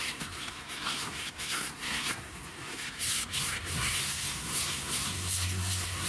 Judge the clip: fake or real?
fake